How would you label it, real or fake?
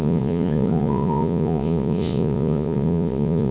fake